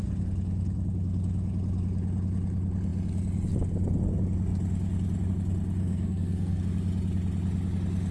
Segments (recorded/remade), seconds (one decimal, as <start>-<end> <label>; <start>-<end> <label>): 0.0-5.8 recorded; 5.8-6.6 remade; 6.6-8.1 recorded